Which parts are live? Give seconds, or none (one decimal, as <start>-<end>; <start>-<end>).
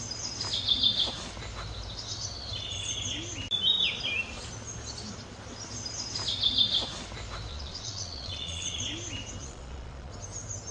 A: 0.0-7.5; 8.8-9.4; 10.1-10.7